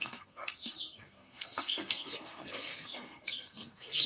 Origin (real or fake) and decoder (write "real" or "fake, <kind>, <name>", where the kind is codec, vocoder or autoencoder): fake, codec, SNAC